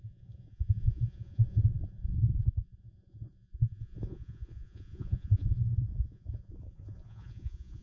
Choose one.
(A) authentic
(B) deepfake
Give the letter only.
B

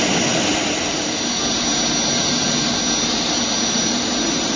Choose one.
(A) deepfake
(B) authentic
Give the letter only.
B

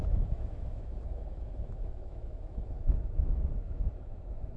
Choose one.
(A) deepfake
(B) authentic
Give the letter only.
A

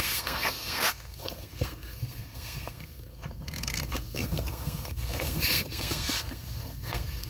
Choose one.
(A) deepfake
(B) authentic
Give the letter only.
A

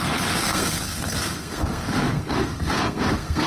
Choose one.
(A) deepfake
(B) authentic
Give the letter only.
A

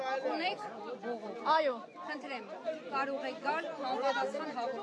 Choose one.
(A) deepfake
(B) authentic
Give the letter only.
B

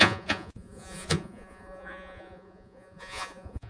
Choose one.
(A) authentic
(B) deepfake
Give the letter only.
B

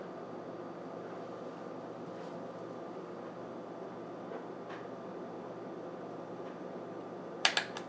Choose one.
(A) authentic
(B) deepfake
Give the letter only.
A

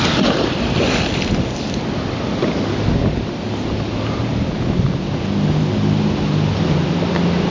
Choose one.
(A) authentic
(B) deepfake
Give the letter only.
A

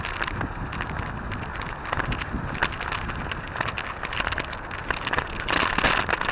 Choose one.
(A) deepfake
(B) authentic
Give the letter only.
B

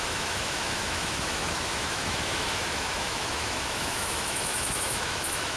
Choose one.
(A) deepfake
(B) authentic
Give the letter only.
A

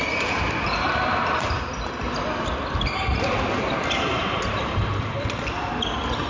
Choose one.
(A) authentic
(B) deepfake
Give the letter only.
B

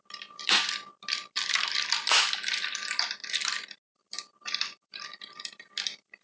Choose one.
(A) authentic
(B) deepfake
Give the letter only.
B